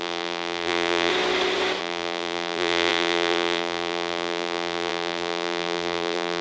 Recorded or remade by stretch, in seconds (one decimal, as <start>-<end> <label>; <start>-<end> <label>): 0.0-1.1 remade; 1.1-1.8 recorded; 1.8-6.4 remade